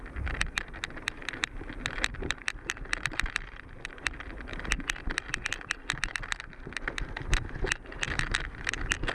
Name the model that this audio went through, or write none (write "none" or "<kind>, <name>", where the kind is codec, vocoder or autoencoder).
none